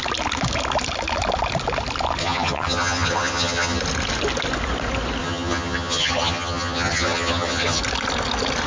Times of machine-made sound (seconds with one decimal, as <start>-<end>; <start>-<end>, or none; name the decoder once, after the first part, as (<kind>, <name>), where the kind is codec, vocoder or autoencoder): 2.2-3.8 (vocoder, HiFi-GAN); 5.2-7.8